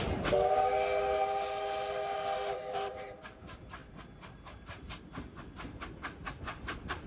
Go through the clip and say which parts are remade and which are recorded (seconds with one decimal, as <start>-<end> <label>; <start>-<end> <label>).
0.0-7.1 recorded